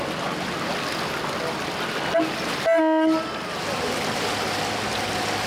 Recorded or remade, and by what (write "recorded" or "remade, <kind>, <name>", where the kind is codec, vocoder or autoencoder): recorded